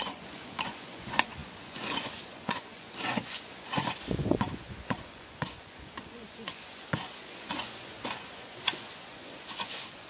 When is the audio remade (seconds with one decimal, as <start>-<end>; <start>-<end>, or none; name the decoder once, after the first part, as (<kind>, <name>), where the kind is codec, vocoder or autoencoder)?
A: 0.0-10.1 (vocoder, Vocos)